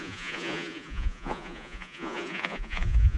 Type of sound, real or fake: fake